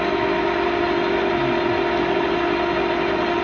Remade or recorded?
recorded